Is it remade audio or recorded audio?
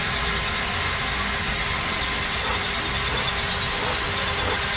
recorded